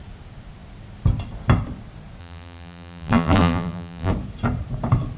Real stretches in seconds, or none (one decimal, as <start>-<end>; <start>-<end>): 0.0-2.2; 4.1-5.2